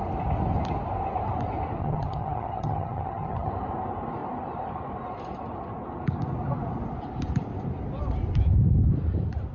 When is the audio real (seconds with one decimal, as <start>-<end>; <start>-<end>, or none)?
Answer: 0.0-1.8; 3.5-9.5